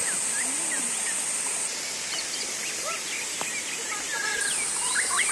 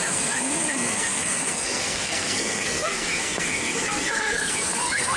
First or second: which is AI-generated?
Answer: second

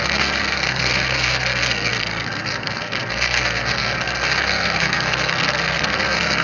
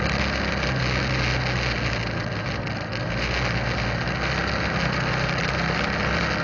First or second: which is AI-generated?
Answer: first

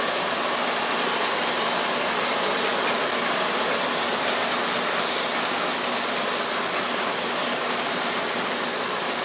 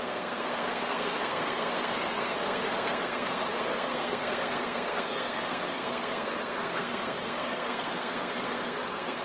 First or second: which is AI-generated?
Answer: second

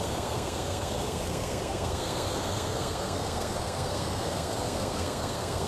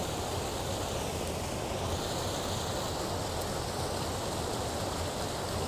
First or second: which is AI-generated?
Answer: first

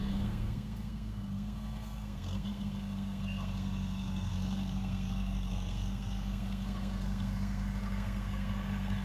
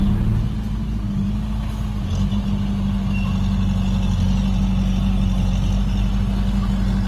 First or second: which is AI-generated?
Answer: first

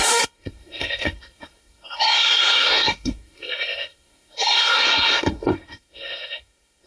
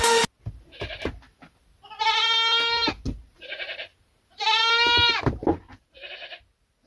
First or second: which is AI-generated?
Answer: first